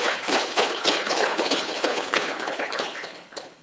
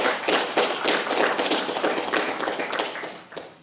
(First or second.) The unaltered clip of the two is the second